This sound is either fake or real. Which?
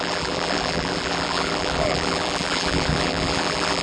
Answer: fake